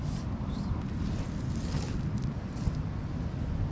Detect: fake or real real